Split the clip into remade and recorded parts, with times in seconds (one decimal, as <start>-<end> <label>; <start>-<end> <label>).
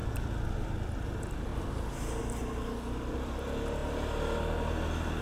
0.0-5.2 recorded